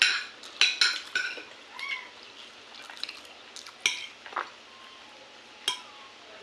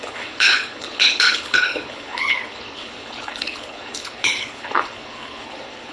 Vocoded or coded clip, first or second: second